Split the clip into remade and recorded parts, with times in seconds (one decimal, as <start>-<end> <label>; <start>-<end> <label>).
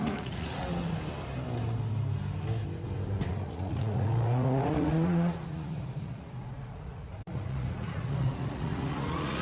0.0-0.6 remade; 0.6-3.3 recorded; 3.3-9.4 remade